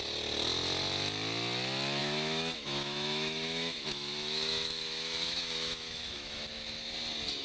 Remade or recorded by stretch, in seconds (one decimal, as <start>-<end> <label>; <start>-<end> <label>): 0.0-2.0 recorded; 2.0-6.4 remade; 6.4-7.4 recorded